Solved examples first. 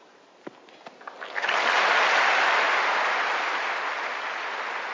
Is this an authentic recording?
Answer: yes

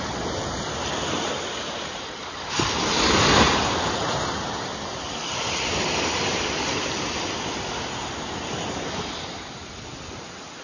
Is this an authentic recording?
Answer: yes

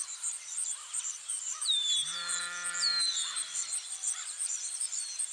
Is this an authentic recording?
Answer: no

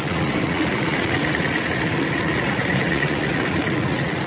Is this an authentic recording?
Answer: no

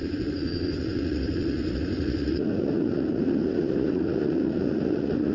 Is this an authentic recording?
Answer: no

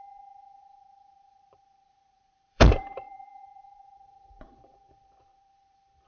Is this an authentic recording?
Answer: no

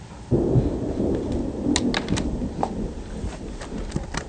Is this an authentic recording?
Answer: yes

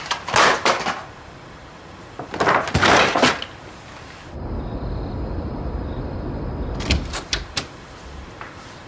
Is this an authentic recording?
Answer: yes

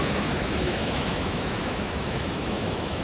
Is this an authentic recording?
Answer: no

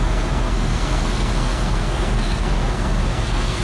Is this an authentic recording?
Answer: no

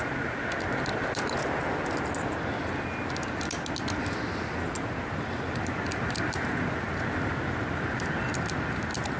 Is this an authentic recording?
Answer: yes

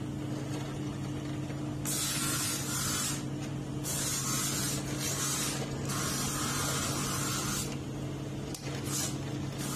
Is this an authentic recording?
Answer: yes